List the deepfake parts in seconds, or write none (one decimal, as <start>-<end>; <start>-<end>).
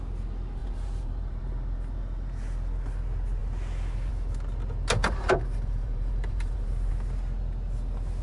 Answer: 0.6-1.4; 5.0-6.9